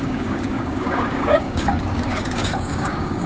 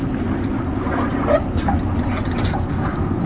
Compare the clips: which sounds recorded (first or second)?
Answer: second